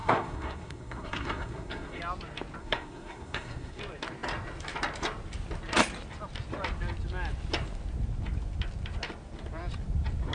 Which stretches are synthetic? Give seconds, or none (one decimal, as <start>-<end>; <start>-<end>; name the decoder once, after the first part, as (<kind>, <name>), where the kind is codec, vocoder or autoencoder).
0.0-2.0 (codec, SNAC); 2.6-3.8